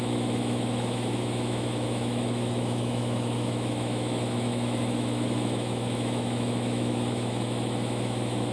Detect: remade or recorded remade